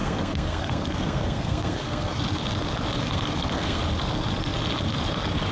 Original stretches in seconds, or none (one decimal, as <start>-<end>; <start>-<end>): 2.2-3.0; 3.8-5.5